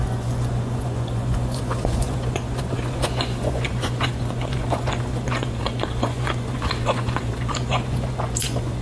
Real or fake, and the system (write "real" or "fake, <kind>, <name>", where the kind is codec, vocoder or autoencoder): fake, vocoder, Vocos